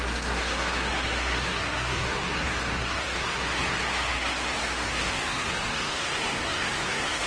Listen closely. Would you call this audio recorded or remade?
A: remade